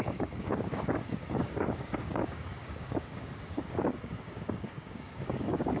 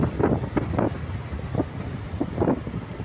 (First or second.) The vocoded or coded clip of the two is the first